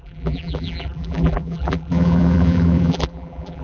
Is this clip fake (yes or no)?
yes